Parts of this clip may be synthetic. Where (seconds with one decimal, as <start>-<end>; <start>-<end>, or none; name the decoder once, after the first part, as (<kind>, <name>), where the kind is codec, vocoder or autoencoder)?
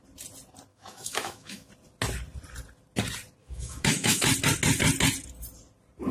0.7-1.7 (autoencoder, DAC-VAE); 3.4-4.2